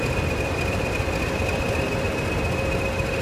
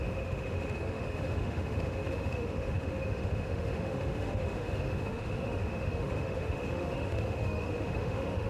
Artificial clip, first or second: second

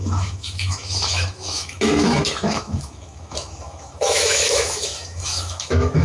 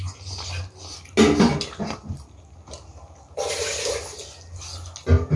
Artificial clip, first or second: first